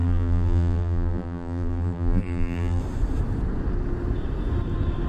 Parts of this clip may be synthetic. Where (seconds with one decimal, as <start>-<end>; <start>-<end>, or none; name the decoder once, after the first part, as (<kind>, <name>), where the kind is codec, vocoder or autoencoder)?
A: 0.0-2.8 (vocoder, BigVGAN v2)